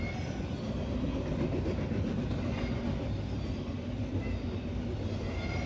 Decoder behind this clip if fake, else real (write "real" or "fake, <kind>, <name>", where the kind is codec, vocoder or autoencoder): real